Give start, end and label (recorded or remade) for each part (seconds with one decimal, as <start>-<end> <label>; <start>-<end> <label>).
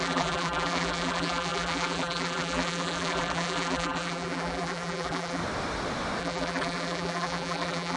0.0-5.4 remade; 5.4-6.2 recorded; 6.2-8.0 remade